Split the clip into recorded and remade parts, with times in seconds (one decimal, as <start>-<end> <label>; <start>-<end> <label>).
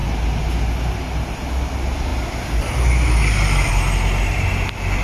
0.0-5.0 recorded